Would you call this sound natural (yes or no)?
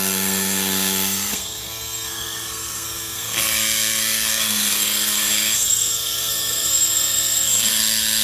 no